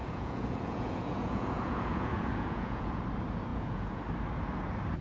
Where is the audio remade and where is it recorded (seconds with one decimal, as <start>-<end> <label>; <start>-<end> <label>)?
0.0-3.0 remade; 3.0-3.5 recorded; 3.5-4.0 remade; 4.0-5.0 recorded